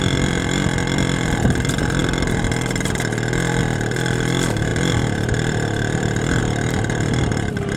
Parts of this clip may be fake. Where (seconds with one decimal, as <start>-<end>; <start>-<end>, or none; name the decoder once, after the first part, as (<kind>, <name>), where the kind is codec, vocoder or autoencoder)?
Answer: 0.0-7.8 (vocoder, BigVGAN v2)